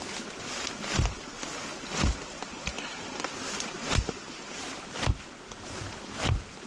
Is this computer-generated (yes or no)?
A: no